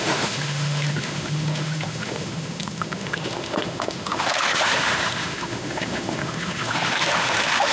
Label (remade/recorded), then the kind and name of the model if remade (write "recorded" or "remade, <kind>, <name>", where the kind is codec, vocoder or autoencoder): remade, autoencoder, DAC-VAE